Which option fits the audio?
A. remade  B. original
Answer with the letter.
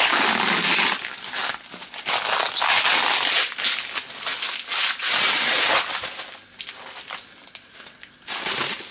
B